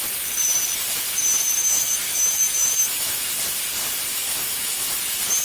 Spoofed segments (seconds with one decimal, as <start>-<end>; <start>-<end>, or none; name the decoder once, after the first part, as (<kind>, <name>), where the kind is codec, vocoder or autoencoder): 1.6-3.3 (autoencoder, DAC-VAE); 4.1-5.0